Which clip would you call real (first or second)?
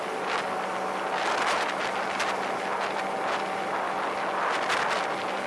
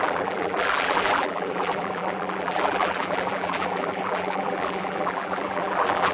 first